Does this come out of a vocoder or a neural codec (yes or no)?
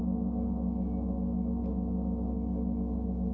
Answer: no